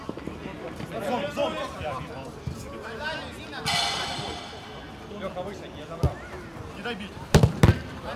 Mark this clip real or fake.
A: real